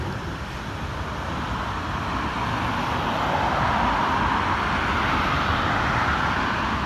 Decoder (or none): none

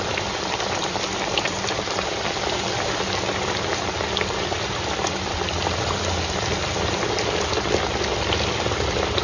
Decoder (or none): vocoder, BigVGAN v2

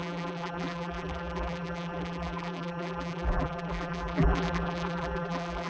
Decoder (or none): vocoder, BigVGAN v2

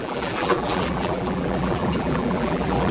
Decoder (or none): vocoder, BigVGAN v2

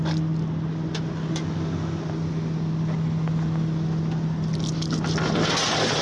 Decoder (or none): none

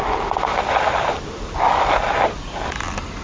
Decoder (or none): none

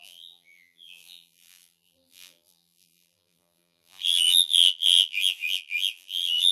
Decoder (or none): vocoder, BigVGAN v2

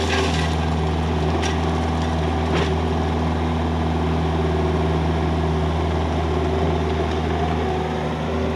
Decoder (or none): none